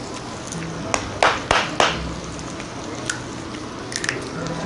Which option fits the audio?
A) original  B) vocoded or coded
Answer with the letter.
A